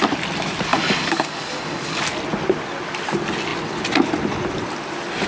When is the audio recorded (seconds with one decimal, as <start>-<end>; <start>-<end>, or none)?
0.0-0.7; 2.0-5.3